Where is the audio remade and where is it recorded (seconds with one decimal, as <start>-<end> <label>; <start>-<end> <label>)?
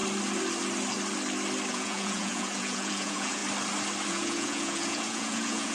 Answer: 0.0-1.7 recorded; 1.7-3.4 remade; 3.4-4.1 recorded; 4.1-5.7 remade